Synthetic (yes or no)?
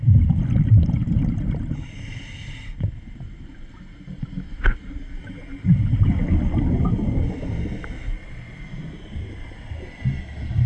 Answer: no